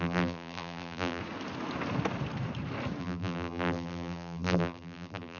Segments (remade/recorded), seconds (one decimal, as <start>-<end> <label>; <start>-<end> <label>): 0.0-1.2 remade; 1.2-3.0 recorded; 3.0-5.4 remade